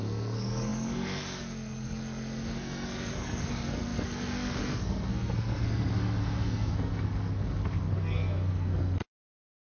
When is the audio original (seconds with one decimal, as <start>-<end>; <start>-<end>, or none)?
none